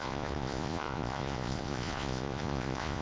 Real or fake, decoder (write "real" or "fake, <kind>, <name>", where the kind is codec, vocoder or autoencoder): fake, vocoder, Vocos